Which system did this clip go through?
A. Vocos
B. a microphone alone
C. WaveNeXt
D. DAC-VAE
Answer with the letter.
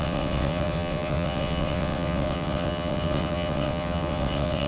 C